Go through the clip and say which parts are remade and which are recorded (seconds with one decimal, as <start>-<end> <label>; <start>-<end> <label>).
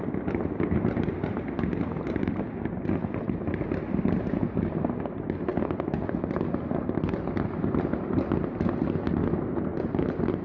0.0-10.4 recorded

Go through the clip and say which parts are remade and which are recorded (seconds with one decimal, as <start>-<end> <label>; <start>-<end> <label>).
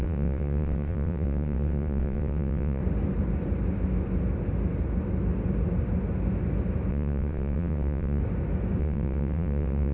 0.0-2.8 remade; 2.8-6.9 recorded; 6.9-8.2 remade; 8.2-8.8 recorded; 8.8-9.9 remade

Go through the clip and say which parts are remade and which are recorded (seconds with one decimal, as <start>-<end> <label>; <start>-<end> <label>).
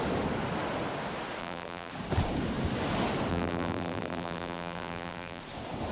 0.0-1.4 recorded; 1.4-1.9 remade; 1.9-3.3 recorded; 3.3-5.4 remade; 5.4-5.9 recorded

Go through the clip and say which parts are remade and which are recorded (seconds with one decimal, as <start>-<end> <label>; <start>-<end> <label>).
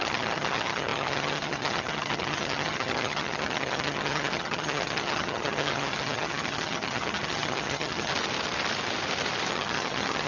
0.0-8.1 remade; 8.1-9.5 recorded; 9.5-10.3 remade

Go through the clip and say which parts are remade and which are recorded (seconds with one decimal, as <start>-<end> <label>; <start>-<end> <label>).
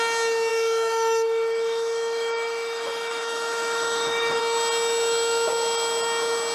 0.0-0.5 recorded; 0.5-4.4 remade; 4.4-6.5 recorded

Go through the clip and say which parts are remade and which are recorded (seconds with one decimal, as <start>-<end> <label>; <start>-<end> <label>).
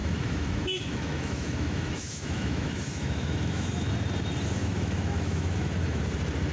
0.0-3.9 remade; 3.9-4.6 recorded; 4.6-6.0 remade; 6.0-6.5 recorded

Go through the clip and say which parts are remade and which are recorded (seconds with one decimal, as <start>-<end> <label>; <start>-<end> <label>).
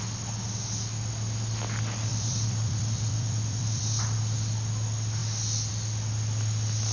0.0-2.1 recorded; 2.1-3.8 remade; 3.8-6.9 recorded